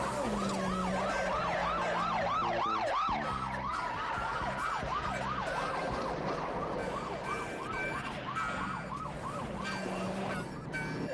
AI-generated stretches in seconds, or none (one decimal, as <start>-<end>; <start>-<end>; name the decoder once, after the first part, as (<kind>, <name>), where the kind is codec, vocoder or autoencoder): 6.8-8.9 (vocoder, BigVGAN v2)